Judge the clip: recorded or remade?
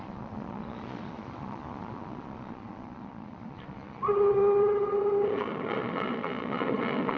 remade